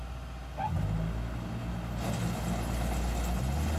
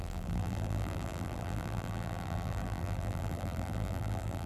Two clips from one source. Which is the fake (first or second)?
second